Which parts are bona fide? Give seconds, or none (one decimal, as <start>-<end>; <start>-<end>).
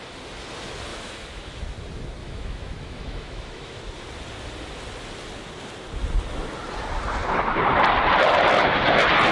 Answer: 0.0-0.9; 1.5-2.2; 3.8-9.3